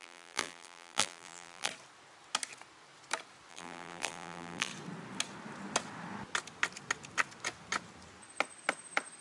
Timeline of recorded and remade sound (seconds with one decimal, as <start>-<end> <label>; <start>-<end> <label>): 0.0-1.7 remade; 1.7-3.5 recorded; 3.5-4.7 remade; 4.7-9.2 recorded